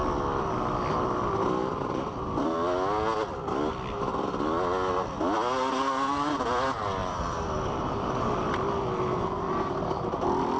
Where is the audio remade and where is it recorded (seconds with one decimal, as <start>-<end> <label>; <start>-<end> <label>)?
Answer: 0.0-1.6 recorded; 1.6-2.2 remade; 2.2-7.0 recorded; 7.0-8.3 remade; 8.3-10.6 recorded